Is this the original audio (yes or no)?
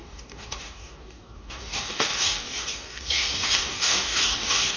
no